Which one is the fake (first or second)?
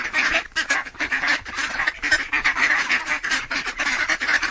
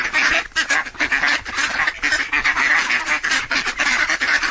first